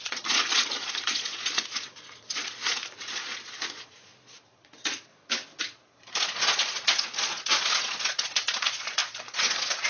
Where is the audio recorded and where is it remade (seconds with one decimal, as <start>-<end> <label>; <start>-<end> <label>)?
0.0-5.1 remade; 5.1-5.6 recorded; 5.6-9.9 remade